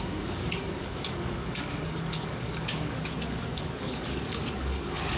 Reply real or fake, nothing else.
fake